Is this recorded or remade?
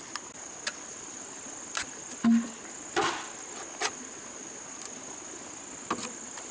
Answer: recorded